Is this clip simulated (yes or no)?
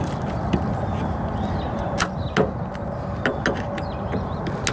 no